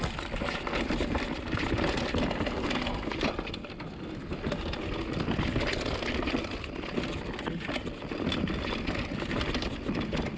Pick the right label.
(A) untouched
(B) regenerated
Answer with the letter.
A